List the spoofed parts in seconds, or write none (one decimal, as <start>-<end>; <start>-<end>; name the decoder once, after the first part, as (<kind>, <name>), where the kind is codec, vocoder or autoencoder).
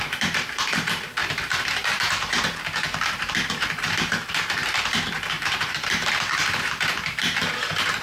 0.0-8.0 (vocoder, BigVGAN v2)